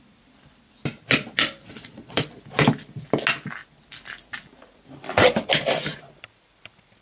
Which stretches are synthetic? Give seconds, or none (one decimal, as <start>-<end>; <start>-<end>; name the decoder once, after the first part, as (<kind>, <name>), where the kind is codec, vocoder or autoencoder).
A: 1.6-2.4 (vocoder, Vocos)